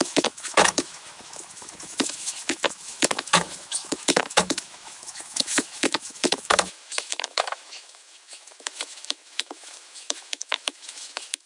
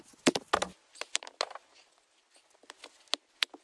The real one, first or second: second